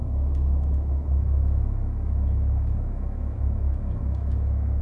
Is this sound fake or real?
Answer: fake